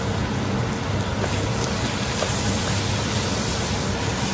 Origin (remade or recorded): recorded